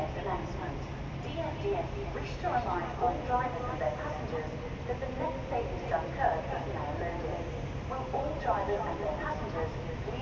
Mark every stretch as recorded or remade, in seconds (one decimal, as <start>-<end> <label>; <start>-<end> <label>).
0.0-10.2 recorded